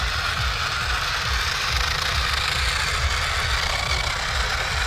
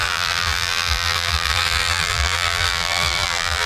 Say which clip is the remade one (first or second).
second